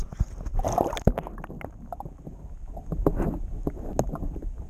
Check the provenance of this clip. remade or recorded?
recorded